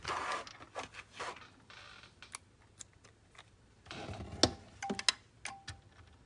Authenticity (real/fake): real